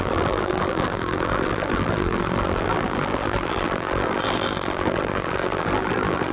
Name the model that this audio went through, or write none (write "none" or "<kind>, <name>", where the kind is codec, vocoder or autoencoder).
vocoder, BigVGAN v2